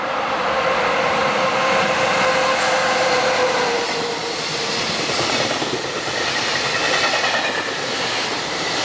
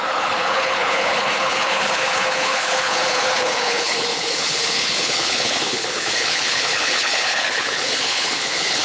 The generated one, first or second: second